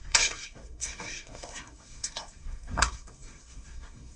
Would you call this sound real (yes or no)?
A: no